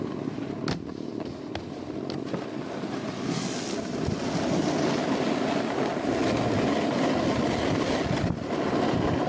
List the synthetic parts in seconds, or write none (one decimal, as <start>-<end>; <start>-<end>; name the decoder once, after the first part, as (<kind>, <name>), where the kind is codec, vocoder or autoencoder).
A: none